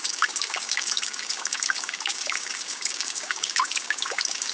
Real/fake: fake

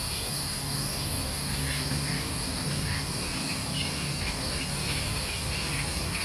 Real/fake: fake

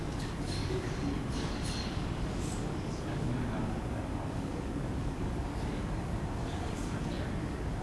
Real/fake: fake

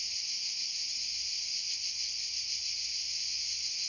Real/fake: real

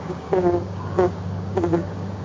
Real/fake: fake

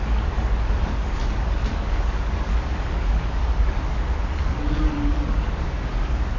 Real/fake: fake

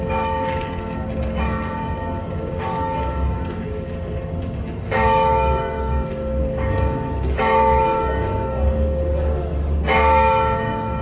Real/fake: fake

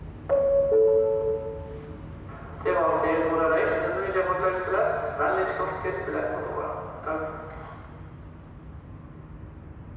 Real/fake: real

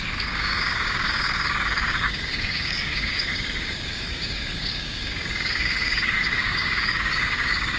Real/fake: fake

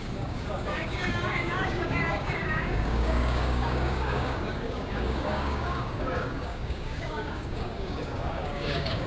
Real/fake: fake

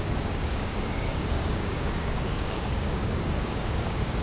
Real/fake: fake